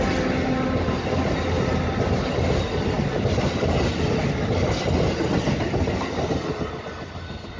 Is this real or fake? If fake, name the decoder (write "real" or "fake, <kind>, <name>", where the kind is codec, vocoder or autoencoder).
real